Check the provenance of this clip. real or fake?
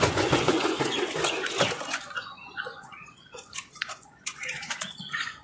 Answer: fake